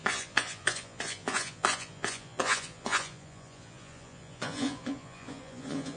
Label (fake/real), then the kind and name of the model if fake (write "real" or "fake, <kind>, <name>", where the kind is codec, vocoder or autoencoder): fake, vocoder, Vocos